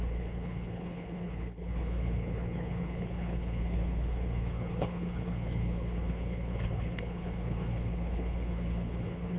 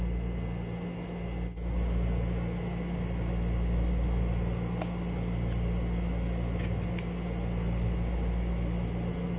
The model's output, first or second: first